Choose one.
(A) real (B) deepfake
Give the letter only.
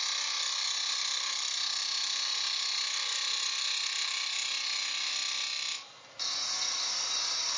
A